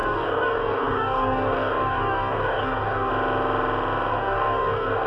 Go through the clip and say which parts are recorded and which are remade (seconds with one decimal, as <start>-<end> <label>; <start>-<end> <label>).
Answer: 0.0-3.1 remade; 3.1-4.1 recorded; 4.1-5.1 remade